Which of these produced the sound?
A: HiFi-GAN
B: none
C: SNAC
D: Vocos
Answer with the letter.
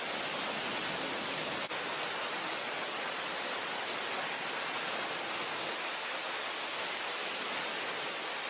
B